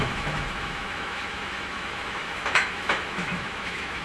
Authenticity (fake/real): fake